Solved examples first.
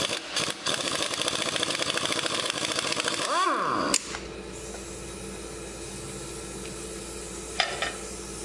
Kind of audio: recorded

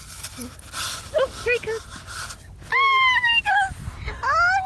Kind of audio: recorded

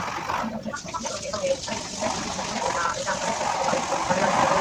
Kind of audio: recorded